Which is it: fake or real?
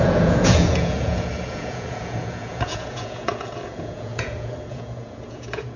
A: fake